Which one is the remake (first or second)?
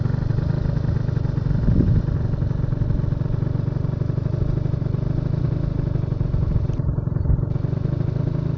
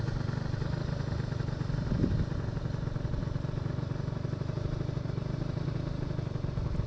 second